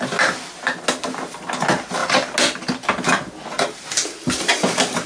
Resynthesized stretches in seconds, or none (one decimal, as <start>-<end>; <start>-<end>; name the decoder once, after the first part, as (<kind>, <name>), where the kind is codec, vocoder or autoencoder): none

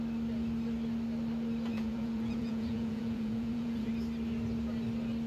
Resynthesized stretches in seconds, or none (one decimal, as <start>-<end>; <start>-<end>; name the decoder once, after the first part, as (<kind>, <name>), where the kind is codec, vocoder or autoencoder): 1.7-3.9 (vocoder, Vocos)

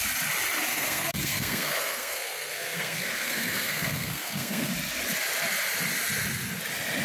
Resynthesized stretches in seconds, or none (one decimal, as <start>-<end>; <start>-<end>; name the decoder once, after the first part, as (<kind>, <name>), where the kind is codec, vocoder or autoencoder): 0.7-4.7 (codec, SNAC)